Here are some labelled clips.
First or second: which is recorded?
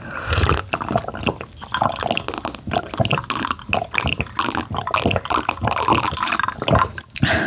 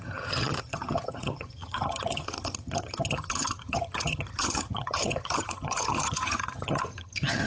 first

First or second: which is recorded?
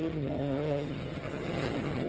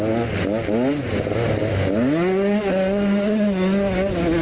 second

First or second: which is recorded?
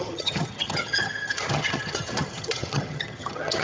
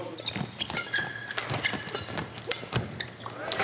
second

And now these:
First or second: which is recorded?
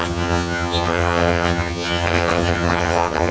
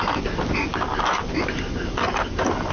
second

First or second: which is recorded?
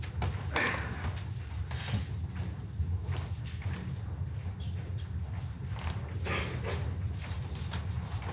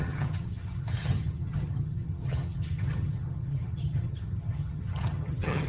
first